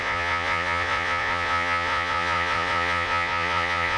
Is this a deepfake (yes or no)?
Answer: yes